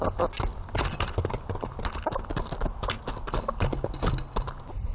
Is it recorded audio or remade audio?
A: recorded